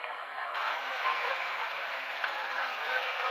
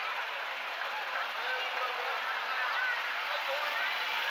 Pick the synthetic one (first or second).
first